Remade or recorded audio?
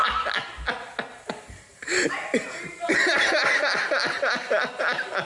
recorded